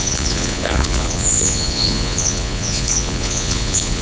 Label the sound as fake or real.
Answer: fake